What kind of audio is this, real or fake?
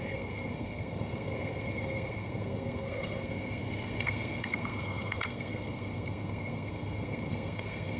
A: fake